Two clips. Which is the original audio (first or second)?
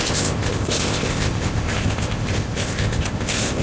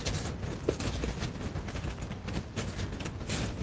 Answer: second